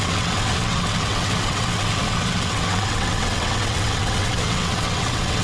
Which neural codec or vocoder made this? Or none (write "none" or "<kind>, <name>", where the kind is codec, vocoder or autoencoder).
vocoder, WaveNeXt